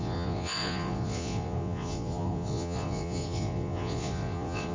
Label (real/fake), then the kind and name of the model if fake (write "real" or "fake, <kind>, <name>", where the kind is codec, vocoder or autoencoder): fake, vocoder, Vocos